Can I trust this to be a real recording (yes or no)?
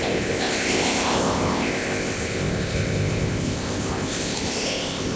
no